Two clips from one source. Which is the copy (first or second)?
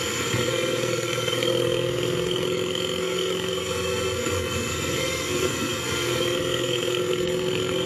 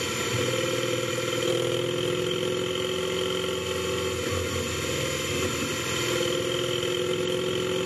first